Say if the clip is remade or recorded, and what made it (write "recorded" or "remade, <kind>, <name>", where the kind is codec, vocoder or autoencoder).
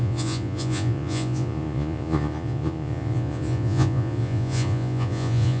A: remade, vocoder, Vocos